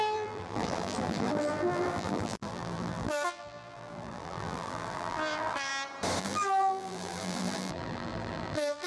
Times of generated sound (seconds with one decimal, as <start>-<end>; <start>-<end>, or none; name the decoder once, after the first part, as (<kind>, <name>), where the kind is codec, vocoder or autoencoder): 0.0-5.7 (vocoder, BigVGAN v2); 6.2-8.9